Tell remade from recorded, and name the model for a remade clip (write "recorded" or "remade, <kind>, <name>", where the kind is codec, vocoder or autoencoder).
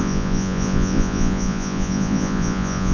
remade, vocoder, Vocos